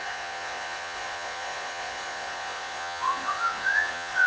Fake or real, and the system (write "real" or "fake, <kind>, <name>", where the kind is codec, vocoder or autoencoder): fake, vocoder, Vocos